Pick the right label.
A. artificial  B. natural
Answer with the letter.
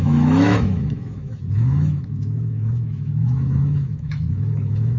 A